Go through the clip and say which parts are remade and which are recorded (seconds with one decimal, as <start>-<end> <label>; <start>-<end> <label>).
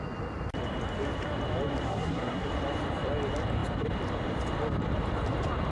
0.0-1.9 recorded; 1.9-2.5 remade; 2.5-5.7 recorded